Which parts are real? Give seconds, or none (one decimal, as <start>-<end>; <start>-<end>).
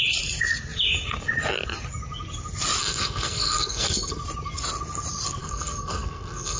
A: 0.0-2.8; 4.2-5.4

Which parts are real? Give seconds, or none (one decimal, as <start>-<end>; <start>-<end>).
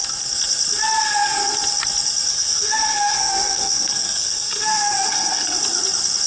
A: 0.0-2.3; 5.6-6.3